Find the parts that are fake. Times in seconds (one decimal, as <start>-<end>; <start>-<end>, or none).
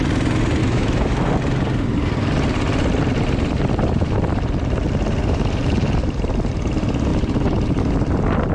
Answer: 0.6-1.3